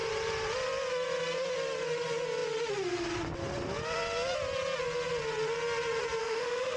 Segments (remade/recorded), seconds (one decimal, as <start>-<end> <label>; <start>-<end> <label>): 0.0-6.2 recorded; 6.2-6.8 remade